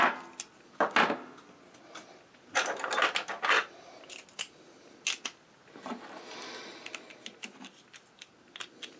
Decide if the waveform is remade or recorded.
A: recorded